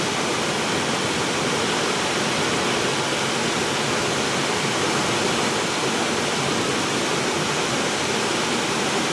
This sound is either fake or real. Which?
real